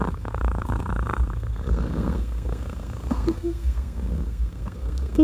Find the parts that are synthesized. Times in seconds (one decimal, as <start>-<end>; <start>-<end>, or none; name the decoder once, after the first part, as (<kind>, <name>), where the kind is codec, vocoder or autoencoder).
0.0-5.2 (codec, SNAC)